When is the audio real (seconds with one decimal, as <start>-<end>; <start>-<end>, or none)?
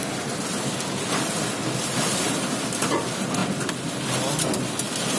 0.0-5.2